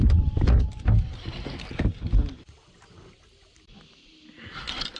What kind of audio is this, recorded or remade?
recorded